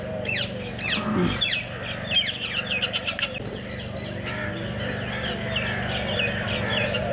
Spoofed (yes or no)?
no